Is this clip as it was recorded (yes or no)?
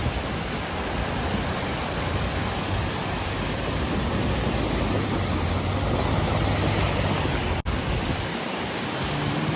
yes